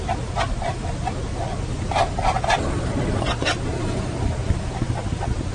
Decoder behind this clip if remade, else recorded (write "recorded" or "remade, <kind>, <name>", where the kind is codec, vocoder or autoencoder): recorded